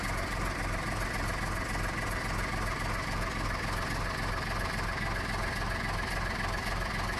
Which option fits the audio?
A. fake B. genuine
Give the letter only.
B